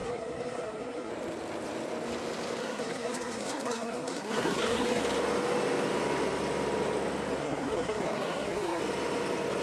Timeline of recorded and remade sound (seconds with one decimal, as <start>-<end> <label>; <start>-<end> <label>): 0.0-1.1 remade; 1.1-2.6 recorded; 2.6-5.0 remade; 5.0-7.4 recorded; 7.4-8.8 remade; 8.8-9.6 recorded